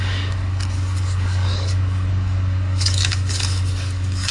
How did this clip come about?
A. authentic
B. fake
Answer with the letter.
B